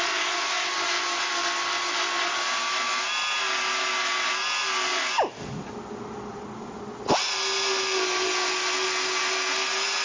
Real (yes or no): yes